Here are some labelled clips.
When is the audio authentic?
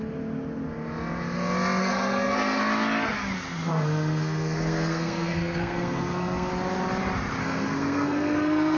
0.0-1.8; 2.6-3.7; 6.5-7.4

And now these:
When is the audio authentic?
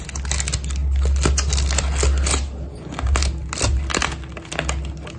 0.0-5.2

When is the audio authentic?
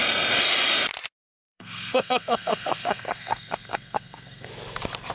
0.0-1.4; 4.5-5.1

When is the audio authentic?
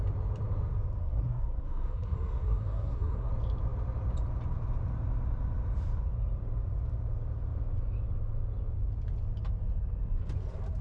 0.0-1.0; 3.3-10.8